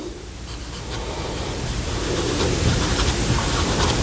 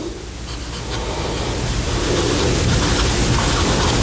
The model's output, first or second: first